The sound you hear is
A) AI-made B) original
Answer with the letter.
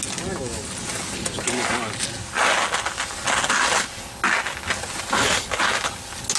B